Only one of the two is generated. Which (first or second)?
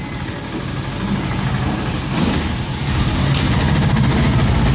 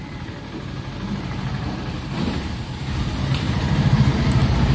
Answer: second